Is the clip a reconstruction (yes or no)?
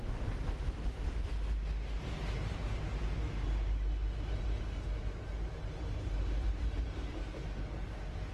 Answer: no